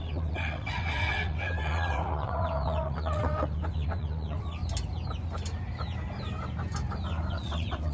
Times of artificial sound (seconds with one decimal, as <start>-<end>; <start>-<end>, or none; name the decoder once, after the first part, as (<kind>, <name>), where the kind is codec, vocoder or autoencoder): 0.0-4.6 (vocoder, WaveNeXt); 7.3-7.9